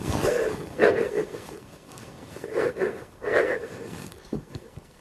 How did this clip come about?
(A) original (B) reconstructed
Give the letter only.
B